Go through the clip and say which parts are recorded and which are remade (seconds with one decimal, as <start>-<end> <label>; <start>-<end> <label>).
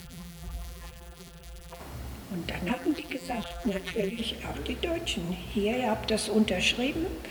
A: 0.0-1.8 remade; 1.8-2.7 recorded; 2.7-4.2 remade; 4.2-7.3 recorded